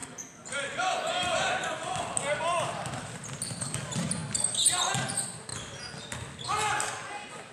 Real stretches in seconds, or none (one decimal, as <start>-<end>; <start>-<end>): 0.0-7.5